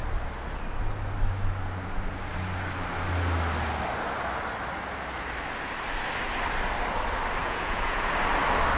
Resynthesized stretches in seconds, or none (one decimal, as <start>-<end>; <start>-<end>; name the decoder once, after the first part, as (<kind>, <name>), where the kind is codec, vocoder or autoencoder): 7.4-8.1 (vocoder, Vocos)